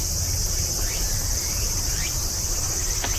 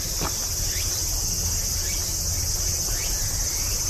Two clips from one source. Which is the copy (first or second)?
first